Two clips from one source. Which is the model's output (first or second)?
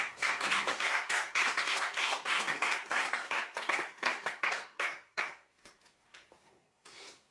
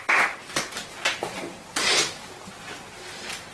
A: first